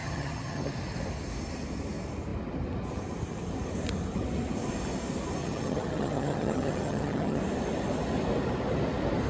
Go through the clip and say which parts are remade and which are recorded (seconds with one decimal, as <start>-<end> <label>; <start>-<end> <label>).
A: 0.0-0.7 remade; 0.7-5.4 recorded; 5.4-7.4 remade; 7.4-9.3 recorded